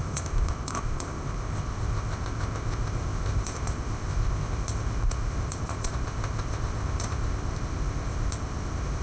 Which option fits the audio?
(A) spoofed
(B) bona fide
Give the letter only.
A